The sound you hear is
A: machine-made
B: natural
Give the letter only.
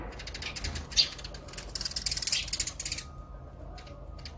B